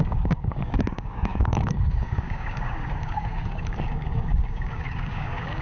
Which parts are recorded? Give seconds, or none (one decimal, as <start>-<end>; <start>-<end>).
none

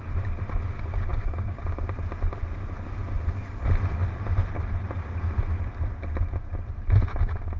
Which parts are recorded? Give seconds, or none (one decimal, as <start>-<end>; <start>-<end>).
0.0-0.9; 1.8-7.6

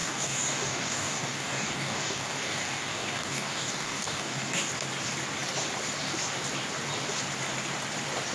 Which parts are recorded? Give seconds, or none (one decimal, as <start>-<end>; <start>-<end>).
4.7-8.3

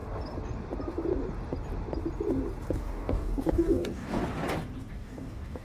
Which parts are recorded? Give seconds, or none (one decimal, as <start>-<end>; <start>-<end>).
0.0-2.8; 4.2-4.9

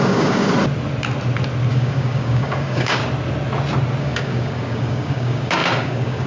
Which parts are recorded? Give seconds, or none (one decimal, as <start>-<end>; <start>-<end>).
0.5-1.7; 3.0-4.0

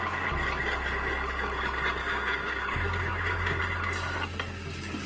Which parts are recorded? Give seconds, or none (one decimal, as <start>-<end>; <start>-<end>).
0.0-2.0; 3.6-5.1